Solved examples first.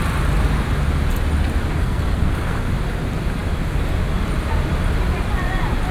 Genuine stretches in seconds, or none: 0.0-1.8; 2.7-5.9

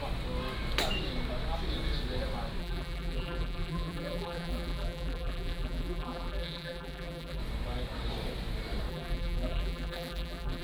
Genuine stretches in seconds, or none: 0.0-2.6; 7.4-8.9

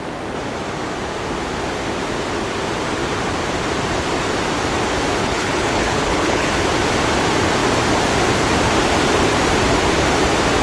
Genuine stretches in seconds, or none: 0.0-5.2; 6.5-10.6

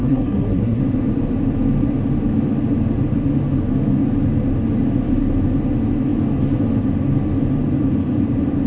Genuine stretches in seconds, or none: 0.8-8.7